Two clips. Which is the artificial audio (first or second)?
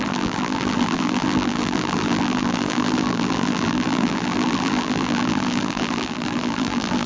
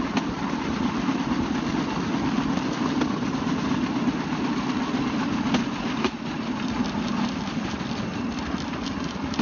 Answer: first